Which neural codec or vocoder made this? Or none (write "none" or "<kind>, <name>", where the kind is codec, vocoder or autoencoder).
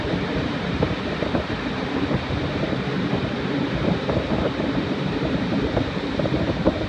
vocoder, BigVGAN v2